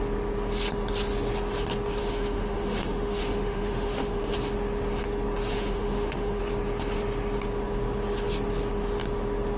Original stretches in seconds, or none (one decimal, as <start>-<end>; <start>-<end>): 0.0-2.0; 4.2-5.5; 6.4-9.6